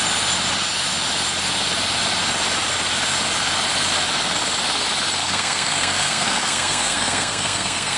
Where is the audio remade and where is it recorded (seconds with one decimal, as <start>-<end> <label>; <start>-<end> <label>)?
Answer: 0.0-5.2 recorded; 5.2-8.0 remade